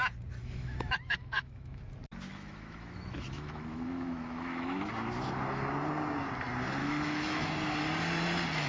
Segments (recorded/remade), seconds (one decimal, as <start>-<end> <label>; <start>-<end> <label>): 0.0-0.4 recorded; 0.4-1.8 remade; 1.8-2.3 recorded; 2.3-4.9 remade; 4.9-6.8 recorded; 6.8-7.5 remade; 7.5-8.7 recorded